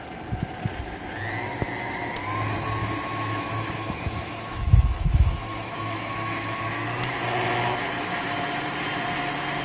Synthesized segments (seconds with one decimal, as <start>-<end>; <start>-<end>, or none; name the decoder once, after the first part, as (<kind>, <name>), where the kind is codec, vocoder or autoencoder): 1.5-2.1 (autoencoder, DAC-VAE); 2.8-6.6

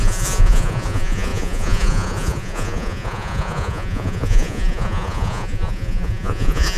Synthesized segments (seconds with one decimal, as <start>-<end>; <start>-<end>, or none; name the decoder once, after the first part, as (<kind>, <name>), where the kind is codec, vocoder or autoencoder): 0.0-6.8 (vocoder, Vocos)